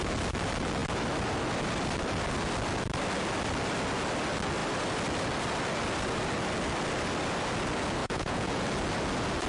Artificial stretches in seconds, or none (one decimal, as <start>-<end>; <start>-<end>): 8.0-8.6